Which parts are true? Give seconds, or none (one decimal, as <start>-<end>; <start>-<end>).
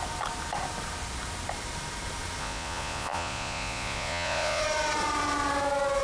0.0-2.4; 4.6-6.0